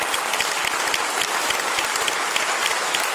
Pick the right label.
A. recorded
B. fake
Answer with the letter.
A